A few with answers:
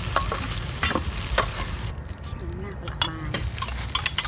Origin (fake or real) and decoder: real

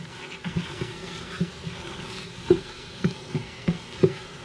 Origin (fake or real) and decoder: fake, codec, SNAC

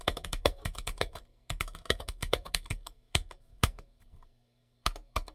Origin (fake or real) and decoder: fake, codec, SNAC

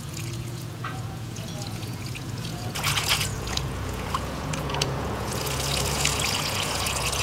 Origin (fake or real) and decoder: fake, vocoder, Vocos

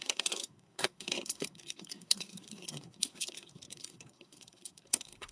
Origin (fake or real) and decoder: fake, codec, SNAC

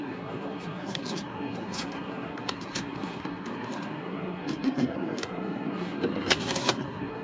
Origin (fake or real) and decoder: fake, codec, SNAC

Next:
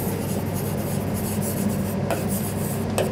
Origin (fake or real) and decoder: real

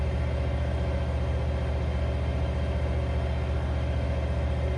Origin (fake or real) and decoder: real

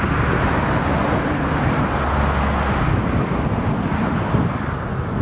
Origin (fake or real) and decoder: real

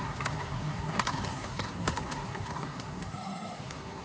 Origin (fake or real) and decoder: fake, codec, SNAC